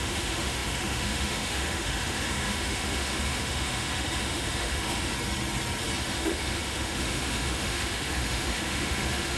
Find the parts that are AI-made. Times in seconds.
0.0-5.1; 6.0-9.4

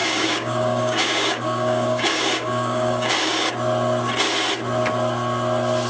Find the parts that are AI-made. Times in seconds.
0.0-3.5

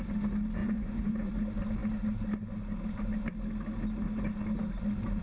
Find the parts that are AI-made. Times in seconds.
0.6-1.3

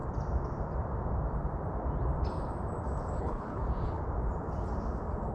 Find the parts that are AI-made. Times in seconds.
3.2-3.6

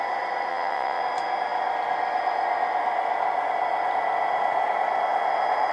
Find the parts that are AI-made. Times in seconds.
0.5-1.0

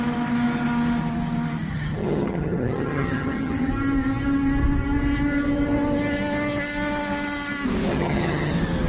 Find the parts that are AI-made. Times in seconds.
1.7-3.7; 7.9-8.5

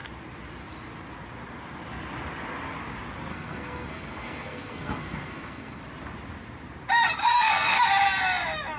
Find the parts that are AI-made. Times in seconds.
3.3-5.8; 7.2-7.8

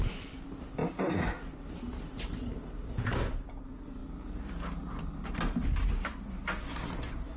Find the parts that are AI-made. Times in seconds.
none